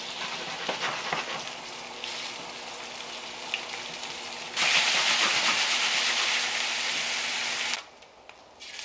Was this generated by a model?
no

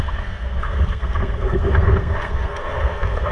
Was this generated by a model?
yes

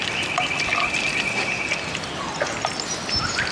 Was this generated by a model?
no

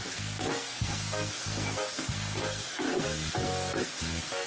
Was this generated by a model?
yes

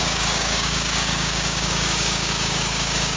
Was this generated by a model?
yes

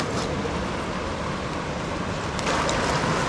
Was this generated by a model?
no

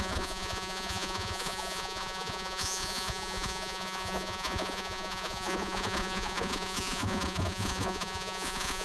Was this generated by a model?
yes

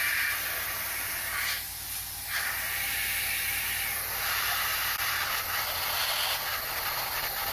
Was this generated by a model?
yes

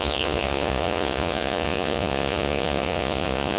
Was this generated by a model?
yes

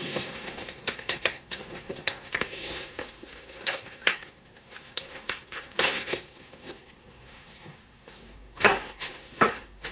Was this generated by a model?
yes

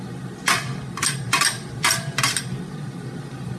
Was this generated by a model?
yes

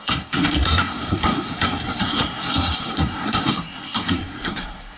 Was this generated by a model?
yes